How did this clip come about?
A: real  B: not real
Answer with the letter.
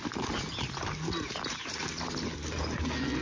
A